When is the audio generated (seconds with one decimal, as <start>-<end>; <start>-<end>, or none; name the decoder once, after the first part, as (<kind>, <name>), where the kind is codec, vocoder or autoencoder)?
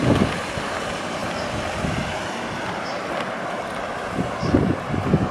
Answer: 1.2-4.4 (vocoder, BigVGAN v2)